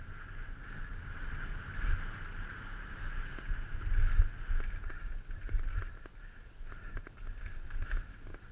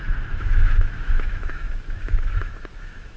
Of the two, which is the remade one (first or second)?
second